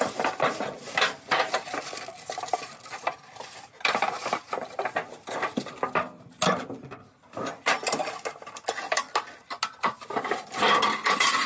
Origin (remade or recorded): recorded